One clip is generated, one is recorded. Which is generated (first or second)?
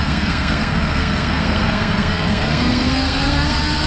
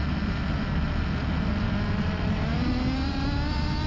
first